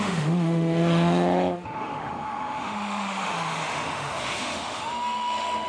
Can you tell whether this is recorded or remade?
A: remade